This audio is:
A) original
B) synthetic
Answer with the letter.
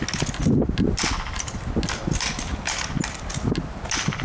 A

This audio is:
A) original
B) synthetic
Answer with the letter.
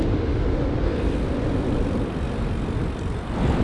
A